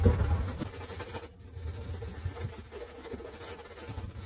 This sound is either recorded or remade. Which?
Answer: recorded